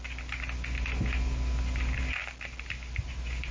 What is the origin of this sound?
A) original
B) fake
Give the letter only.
A